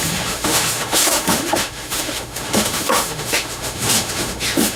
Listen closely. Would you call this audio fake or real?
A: fake